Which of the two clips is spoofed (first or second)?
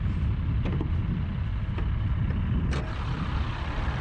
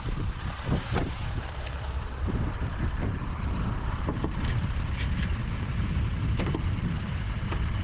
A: second